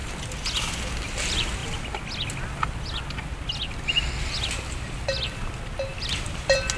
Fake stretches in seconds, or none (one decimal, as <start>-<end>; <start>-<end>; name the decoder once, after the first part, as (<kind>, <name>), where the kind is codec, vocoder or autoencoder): none